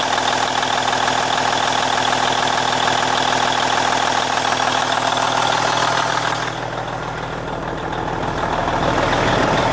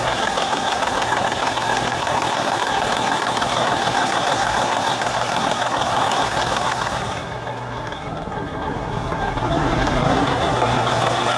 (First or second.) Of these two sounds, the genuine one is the first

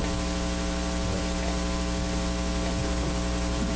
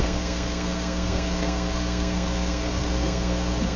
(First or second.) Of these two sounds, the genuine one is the first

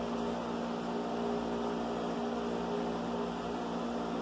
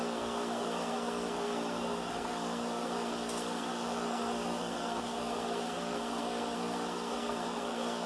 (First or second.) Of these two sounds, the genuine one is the first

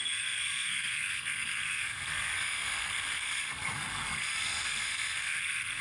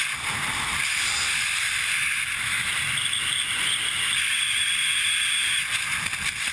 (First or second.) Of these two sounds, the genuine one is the second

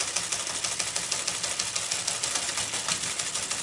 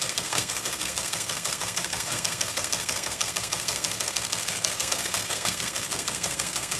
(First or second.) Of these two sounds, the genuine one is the first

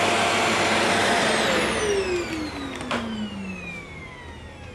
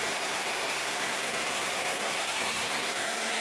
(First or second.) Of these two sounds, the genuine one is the first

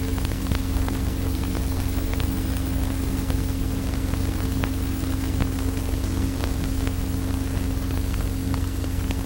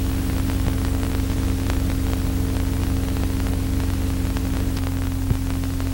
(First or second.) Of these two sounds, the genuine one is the second